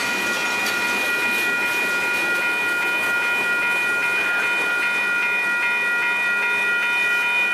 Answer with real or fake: real